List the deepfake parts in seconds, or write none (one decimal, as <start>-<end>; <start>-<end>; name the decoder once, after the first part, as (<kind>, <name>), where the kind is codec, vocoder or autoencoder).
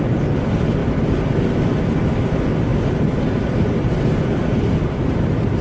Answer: none